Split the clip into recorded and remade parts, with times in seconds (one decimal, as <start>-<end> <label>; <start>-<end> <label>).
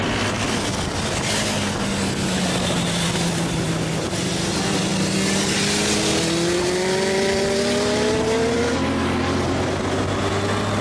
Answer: 0.0-10.8 recorded